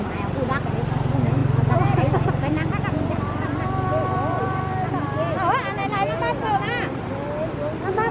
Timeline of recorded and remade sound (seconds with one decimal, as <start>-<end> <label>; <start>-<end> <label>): 0.0-8.1 recorded